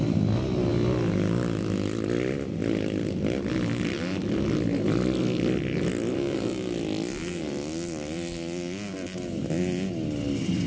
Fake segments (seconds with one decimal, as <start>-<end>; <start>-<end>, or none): none